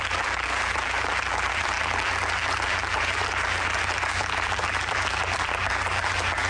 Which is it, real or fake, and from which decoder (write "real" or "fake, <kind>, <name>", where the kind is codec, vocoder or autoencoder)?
fake, vocoder, BigVGAN v2